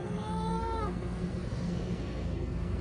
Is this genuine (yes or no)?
no